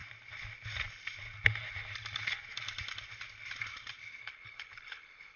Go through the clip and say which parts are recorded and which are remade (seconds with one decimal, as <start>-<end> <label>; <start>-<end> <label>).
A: 0.0-4.2 recorded; 4.2-5.4 remade